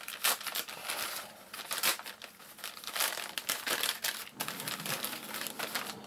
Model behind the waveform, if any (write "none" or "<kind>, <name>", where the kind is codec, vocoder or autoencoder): none